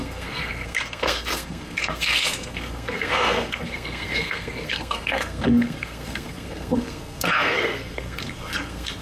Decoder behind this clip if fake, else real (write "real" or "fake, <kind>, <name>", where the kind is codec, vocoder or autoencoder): fake, codec, SNAC